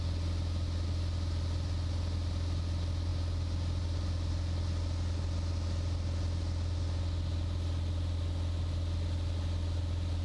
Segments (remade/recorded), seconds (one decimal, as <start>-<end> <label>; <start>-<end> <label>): 0.0-10.2 recorded

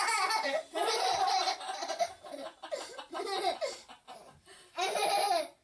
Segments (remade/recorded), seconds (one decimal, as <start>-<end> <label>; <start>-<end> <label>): 0.0-5.6 recorded